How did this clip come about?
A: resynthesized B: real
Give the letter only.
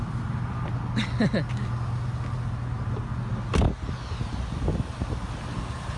B